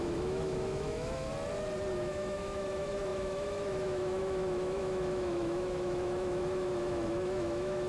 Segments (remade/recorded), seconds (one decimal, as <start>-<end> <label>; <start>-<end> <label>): 0.0-1.3 remade; 1.3-1.9 recorded; 1.9-7.9 remade